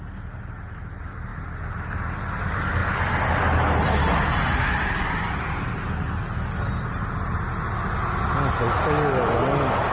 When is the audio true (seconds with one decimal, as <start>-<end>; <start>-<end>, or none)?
0.0-9.9